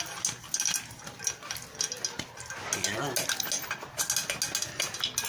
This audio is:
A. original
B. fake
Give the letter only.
A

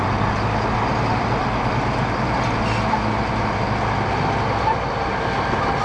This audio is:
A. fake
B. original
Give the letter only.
B